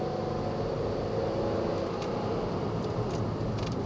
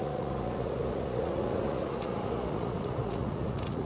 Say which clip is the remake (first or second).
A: second